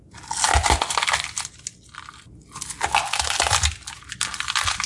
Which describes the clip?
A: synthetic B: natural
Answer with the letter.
B